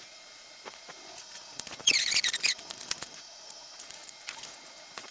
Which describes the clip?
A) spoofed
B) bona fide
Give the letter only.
A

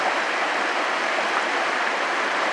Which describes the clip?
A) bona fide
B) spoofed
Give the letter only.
A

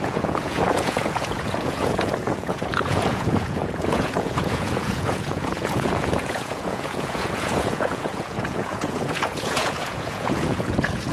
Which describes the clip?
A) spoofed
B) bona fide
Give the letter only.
A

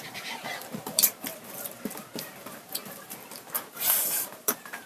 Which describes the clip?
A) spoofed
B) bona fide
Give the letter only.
A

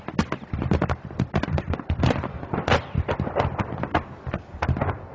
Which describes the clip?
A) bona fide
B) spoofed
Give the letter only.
A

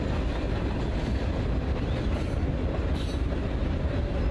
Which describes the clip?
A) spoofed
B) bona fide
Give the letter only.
B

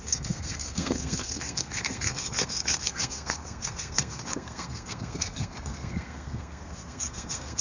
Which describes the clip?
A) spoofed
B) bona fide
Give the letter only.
A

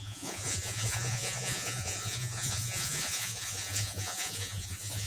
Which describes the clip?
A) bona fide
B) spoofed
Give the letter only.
B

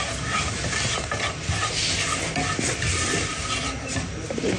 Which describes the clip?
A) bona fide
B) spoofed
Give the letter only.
A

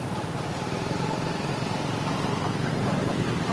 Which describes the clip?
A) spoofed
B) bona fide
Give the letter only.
B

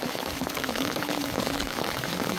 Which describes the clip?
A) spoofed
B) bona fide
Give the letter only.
A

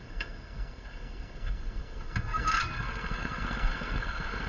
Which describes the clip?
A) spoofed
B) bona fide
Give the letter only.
A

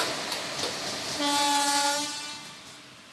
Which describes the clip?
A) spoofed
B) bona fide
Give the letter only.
B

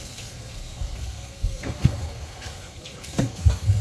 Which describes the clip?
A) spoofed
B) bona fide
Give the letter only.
A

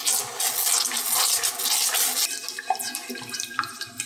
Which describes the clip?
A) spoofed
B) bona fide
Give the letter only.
B